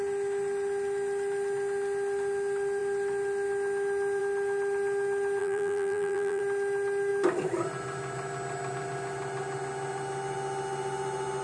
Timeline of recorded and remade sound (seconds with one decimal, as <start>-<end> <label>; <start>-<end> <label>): 0.0-5.4 recorded; 5.4-6.4 remade; 6.4-11.4 recorded